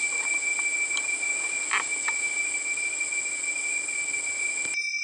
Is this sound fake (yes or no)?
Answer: no